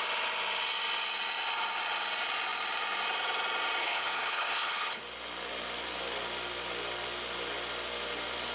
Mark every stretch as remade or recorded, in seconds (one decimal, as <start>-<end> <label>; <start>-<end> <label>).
0.0-3.8 recorded; 3.8-5.0 remade; 5.0-8.5 recorded